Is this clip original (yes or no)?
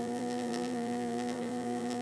no